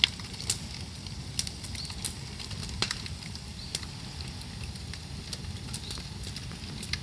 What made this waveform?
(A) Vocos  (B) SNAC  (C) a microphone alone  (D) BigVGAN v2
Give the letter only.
C